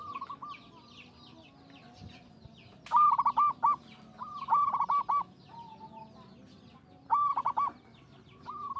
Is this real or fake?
real